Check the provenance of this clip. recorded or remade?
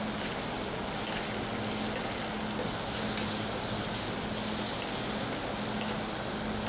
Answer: recorded